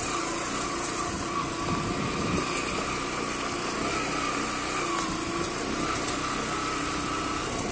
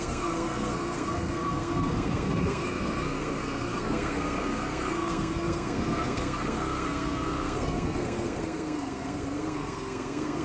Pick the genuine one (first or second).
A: first